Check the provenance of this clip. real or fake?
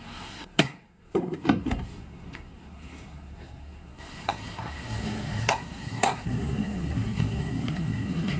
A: fake